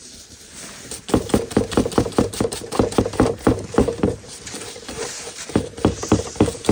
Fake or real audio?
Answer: real